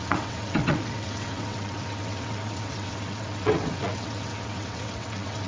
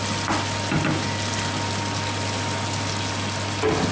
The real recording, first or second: second